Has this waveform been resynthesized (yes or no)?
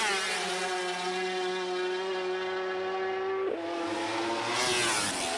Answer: no